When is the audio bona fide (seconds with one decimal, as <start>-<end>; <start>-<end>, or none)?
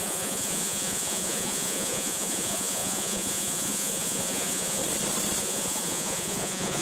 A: 4.8-5.4